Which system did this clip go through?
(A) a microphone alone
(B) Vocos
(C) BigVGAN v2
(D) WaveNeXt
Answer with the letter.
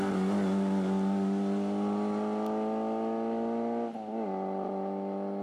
A